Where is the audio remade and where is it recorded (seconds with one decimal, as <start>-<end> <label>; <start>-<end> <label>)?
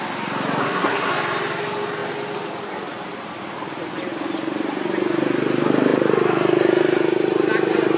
0.0-0.6 recorded; 0.6-1.1 remade; 1.1-8.0 recorded